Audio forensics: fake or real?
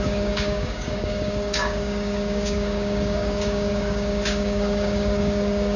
fake